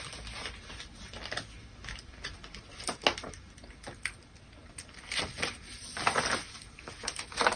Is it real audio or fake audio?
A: real